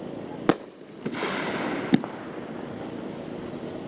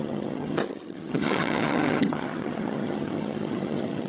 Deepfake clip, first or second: second